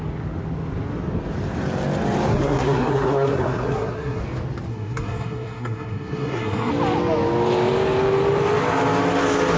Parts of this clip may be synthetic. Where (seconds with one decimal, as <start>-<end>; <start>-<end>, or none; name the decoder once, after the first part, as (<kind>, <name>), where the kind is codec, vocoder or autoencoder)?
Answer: 2.3-4.2 (codec, SNAC); 4.7-6.7